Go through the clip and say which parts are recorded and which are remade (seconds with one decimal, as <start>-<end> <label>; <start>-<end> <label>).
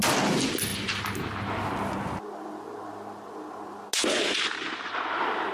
0.0-5.5 recorded